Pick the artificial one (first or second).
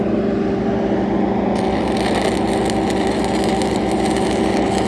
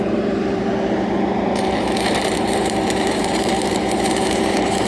second